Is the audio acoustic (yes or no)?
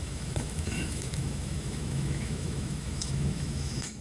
no